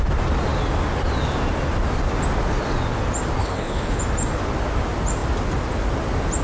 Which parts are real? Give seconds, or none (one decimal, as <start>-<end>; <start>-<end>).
0.0-3.4; 4.0-6.4